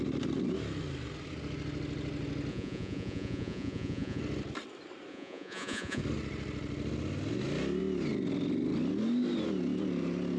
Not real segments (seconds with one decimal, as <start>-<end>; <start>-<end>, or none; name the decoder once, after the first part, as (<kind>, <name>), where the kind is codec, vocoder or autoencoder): 2.5-4.2 (vocoder, Vocos); 5.1-6.0